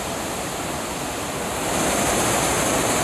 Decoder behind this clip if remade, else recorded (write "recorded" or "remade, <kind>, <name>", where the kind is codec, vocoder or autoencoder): remade, vocoder, BigVGAN v2